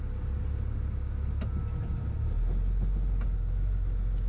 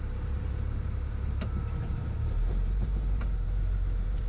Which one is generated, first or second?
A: second